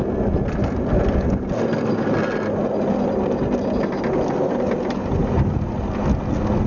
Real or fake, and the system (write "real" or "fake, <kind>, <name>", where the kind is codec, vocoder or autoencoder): real